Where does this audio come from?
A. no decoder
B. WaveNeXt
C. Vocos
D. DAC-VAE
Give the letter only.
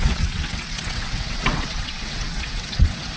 B